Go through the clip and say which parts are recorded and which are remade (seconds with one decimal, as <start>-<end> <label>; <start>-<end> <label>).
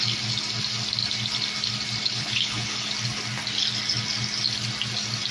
0.0-2.0 recorded; 2.0-2.9 remade; 2.9-5.3 recorded